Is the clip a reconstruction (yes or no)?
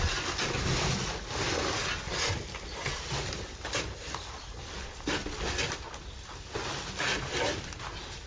no